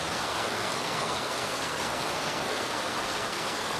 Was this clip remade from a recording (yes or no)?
yes